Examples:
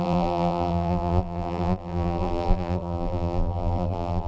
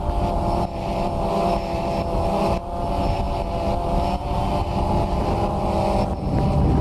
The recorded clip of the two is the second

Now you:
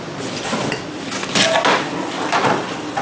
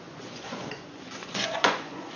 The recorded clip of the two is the first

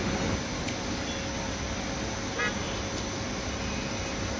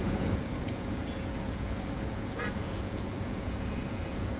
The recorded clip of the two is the first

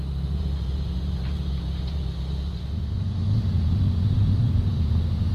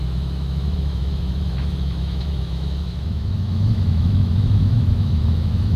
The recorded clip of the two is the first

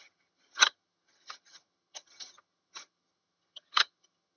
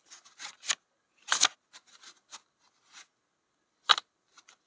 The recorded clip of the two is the second